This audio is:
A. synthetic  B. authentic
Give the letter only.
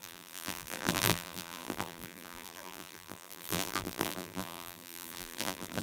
A